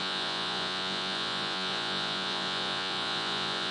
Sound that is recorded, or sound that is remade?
remade